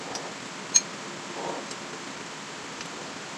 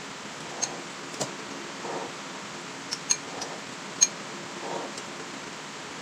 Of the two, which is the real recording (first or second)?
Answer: second